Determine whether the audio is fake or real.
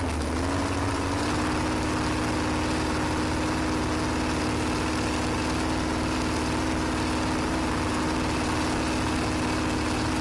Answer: real